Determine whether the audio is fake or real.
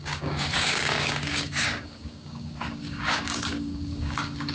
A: fake